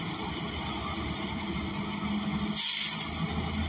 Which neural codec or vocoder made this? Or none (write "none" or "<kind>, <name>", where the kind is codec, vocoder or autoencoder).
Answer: none